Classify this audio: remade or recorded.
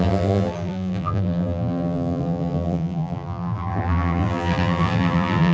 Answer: remade